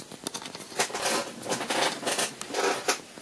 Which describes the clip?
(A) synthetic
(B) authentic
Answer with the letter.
B